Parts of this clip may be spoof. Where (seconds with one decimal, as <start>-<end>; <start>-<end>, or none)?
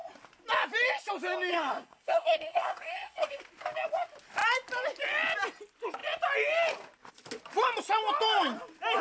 1.5-3.4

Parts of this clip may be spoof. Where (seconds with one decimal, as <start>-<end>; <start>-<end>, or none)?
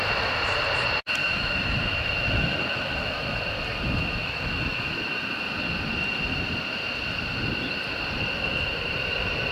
1.2-3.4; 4.2-5.0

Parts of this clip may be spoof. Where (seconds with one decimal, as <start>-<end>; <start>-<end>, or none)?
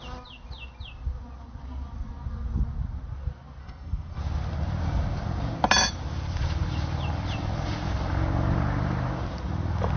3.6-4.2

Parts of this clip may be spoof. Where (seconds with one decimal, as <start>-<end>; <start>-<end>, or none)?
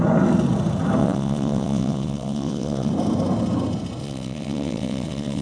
1.0-2.9; 4.0-5.4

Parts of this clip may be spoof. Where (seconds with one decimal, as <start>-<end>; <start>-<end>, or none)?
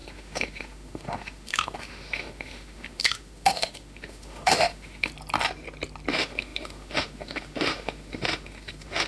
0.0-5.1; 6.1-9.1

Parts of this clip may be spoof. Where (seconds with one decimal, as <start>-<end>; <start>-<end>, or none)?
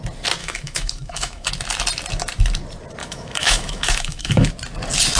0.4-1.5; 3.0-4.5